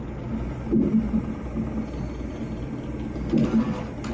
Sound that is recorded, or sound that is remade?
recorded